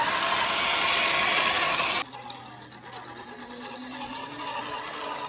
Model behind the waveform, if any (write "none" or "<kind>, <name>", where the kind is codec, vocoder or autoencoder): none